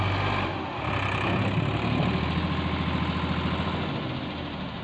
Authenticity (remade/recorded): recorded